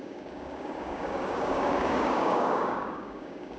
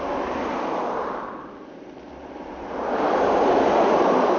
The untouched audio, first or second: second